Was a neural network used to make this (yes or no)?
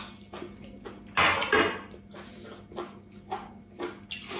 no